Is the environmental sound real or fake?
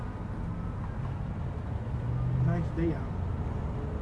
real